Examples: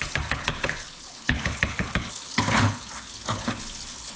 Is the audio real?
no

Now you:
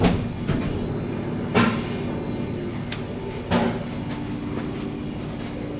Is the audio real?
yes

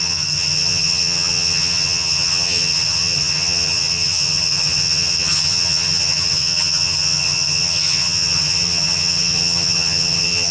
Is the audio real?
no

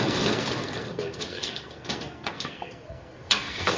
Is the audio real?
no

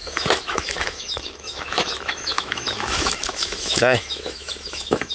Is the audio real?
no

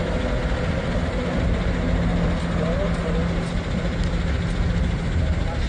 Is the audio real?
yes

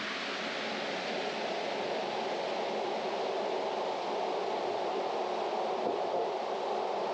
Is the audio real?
yes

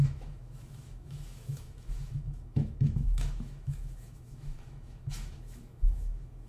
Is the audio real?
no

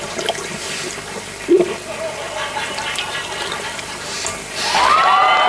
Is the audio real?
no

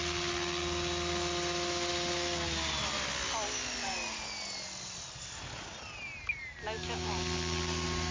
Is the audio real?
yes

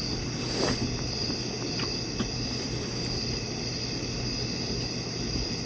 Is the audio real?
yes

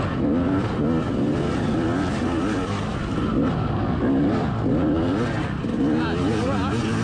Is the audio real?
yes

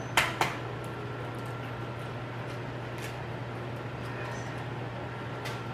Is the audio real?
yes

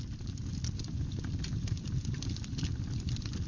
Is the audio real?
yes